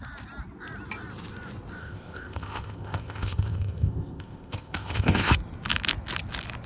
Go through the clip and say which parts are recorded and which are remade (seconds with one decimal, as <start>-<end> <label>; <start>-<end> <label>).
0.0-1.8 recorded; 1.8-5.3 remade; 5.3-6.7 recorded